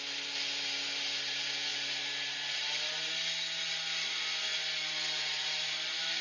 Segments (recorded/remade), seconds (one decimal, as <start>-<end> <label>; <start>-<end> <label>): 0.0-1.7 recorded; 1.7-3.1 remade; 3.1-4.5 recorded; 4.5-6.2 remade